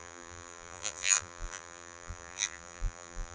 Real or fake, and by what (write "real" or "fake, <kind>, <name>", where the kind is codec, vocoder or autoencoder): fake, vocoder, BigVGAN v2